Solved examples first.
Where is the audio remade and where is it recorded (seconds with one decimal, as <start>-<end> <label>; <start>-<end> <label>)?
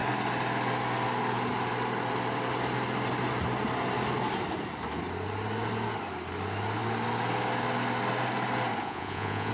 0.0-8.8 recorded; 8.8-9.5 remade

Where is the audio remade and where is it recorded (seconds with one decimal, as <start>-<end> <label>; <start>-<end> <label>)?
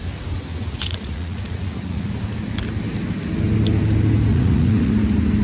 0.0-0.5 recorded; 0.5-2.1 remade; 2.1-4.3 recorded; 4.3-4.9 remade; 4.9-5.4 recorded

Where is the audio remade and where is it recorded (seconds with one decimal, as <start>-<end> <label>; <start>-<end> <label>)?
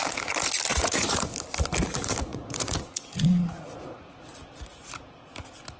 0.0-0.7 recorded; 0.7-1.3 remade; 1.3-2.3 recorded; 2.3-4.2 remade; 4.2-5.8 recorded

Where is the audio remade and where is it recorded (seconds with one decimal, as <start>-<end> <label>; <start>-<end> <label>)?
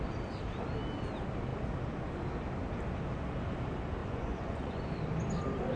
0.0-4.0 recorded; 4.0-4.8 remade; 4.8-5.8 recorded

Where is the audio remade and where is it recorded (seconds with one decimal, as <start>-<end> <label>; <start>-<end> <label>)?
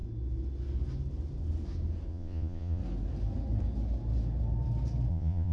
0.0-2.1 recorded; 2.1-2.8 remade; 2.8-5.1 recorded; 5.1-5.5 remade